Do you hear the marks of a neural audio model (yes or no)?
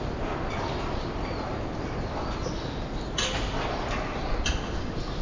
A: no